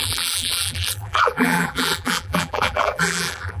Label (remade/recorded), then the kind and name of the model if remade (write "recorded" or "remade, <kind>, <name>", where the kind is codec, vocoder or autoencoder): remade, vocoder, BigVGAN v2